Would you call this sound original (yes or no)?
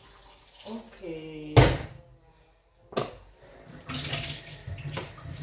yes